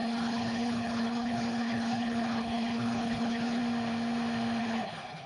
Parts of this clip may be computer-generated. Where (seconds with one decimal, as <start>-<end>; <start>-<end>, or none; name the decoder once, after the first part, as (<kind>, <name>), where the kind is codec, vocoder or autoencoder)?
0.0-3.6 (codec, HILCodec); 4.6-5.3